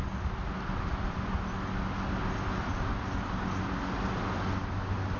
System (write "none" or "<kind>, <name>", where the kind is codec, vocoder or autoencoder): none